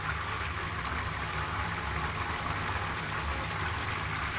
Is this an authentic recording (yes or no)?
yes